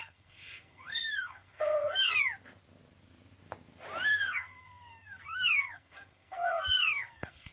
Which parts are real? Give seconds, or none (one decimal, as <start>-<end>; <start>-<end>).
2.2-4.1